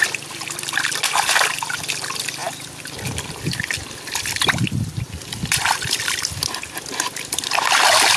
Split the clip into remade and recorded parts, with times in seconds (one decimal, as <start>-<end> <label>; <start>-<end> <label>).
0.0-8.2 recorded